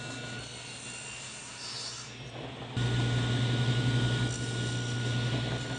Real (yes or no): yes